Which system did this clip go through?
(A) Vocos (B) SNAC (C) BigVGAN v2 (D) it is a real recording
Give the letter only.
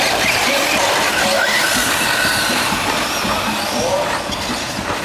D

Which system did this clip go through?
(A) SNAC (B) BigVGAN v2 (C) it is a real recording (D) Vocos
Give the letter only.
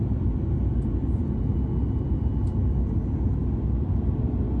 C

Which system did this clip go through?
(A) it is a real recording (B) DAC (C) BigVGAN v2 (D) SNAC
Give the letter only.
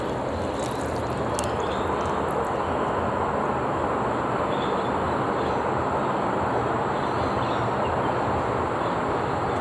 A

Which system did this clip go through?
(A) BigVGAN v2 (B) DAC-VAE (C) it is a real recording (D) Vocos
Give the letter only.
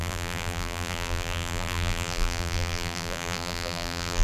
A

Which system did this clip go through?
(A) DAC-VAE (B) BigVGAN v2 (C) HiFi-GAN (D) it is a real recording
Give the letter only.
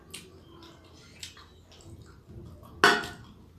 D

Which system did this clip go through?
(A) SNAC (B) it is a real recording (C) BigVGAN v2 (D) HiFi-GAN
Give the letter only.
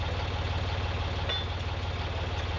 B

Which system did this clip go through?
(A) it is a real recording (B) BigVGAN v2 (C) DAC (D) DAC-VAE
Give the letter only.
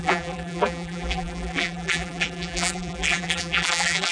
B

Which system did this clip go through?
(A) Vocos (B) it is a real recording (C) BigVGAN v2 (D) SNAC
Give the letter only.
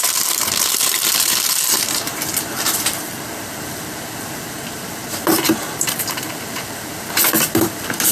C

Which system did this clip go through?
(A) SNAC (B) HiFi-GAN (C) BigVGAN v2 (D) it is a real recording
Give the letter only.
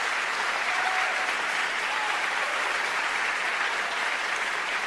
C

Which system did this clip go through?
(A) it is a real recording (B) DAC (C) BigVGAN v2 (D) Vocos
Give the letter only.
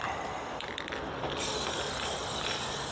C